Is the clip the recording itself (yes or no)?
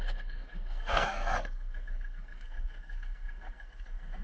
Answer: no